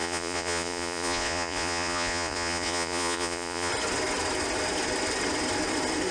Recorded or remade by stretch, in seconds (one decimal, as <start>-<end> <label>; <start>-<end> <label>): 0.0-3.7 remade; 3.7-6.1 recorded